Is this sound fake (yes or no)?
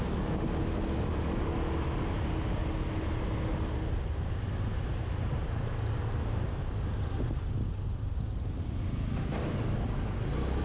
no